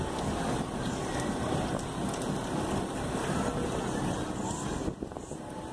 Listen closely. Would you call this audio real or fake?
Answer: real